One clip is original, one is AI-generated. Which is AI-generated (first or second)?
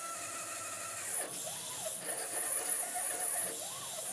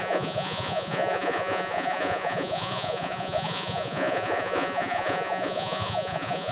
second